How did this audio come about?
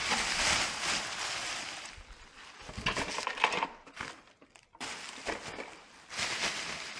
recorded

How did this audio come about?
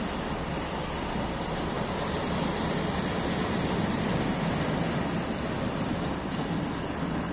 recorded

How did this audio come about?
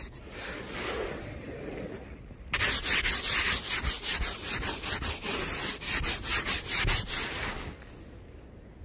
recorded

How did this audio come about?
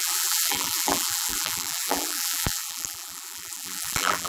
remade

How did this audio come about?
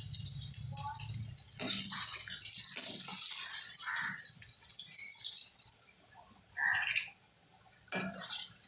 recorded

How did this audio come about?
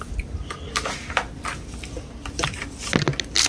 recorded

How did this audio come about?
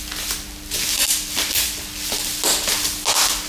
recorded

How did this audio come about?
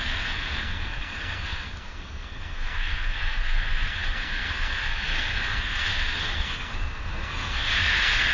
remade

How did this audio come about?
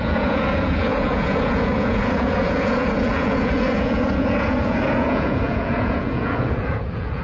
remade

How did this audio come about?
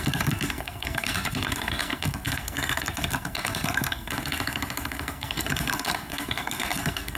remade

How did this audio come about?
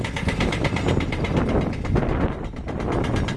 recorded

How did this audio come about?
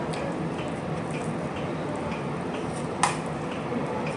recorded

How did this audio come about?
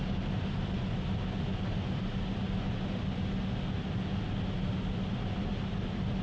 recorded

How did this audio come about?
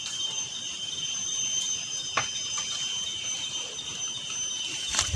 remade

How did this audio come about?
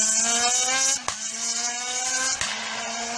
recorded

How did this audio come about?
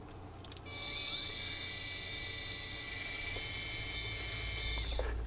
recorded